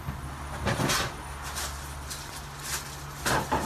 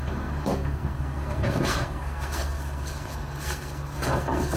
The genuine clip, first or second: first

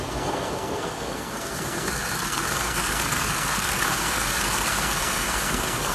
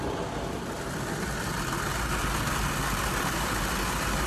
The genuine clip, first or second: second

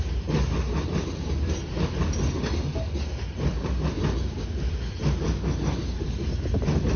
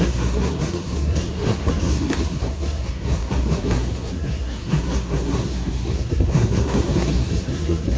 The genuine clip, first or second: first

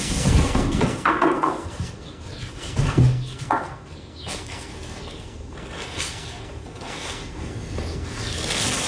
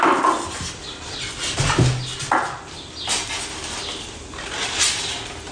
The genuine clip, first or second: second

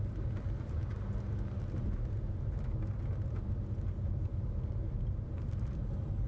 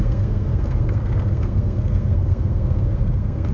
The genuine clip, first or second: first